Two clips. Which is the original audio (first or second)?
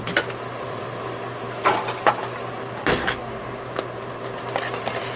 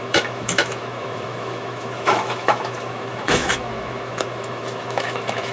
first